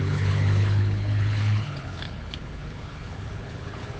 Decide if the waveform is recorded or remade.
remade